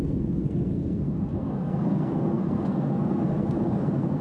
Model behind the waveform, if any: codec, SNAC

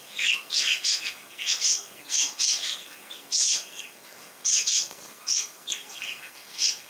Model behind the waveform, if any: codec, SNAC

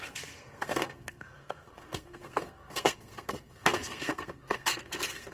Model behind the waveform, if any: codec, SNAC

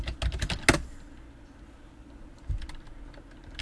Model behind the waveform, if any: none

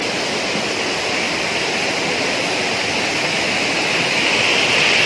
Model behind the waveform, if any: none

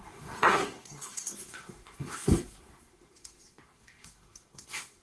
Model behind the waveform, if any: codec, SNAC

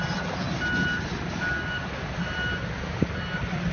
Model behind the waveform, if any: none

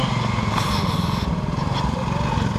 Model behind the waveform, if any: none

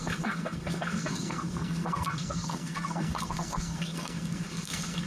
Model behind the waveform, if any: codec, SNAC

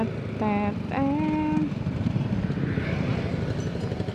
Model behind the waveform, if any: none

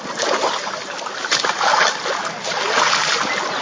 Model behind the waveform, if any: none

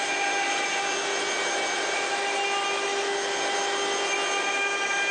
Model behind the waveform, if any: none